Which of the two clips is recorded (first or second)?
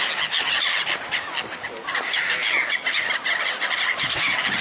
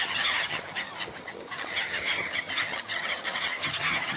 first